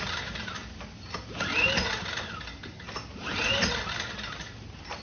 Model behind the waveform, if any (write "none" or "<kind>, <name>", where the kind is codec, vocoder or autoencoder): none